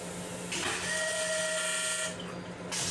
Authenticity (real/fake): real